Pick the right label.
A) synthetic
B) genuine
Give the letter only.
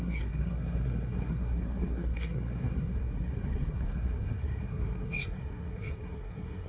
A